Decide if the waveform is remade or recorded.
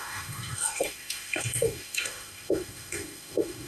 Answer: remade